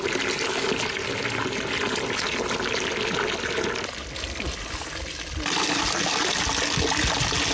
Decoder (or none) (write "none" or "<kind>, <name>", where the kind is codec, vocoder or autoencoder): none